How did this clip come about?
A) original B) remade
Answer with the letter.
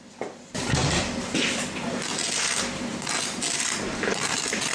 A